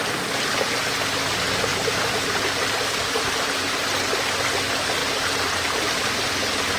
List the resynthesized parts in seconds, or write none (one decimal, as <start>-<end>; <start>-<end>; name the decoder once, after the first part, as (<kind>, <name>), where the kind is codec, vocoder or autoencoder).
1.7-3.8 (vocoder, BigVGAN v2); 5.0-6.3